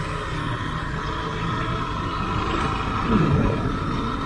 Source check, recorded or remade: recorded